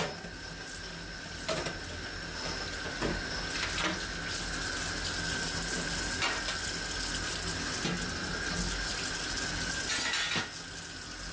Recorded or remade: recorded